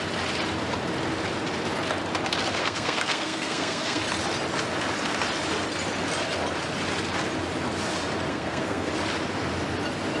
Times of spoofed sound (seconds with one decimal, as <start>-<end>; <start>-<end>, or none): 2.6-4.0; 8.3-8.9